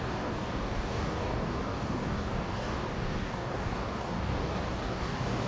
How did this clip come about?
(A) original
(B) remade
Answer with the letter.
B